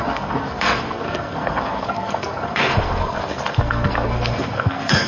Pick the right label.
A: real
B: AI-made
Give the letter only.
B